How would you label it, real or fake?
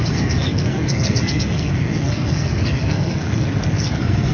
fake